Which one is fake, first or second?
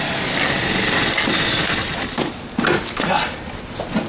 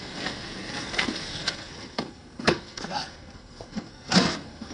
second